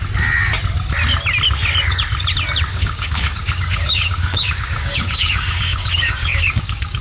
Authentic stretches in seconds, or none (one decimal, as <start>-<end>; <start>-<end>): 0.0-2.7